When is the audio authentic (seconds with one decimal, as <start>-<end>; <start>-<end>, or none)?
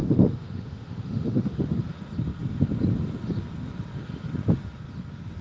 1.8-5.4